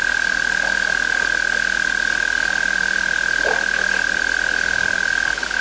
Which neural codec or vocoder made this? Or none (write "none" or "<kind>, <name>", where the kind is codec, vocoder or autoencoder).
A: none